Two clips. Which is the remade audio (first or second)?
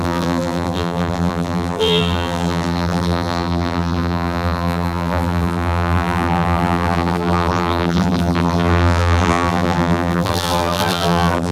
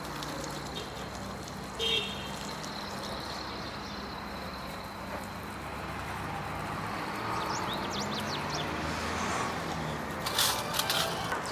first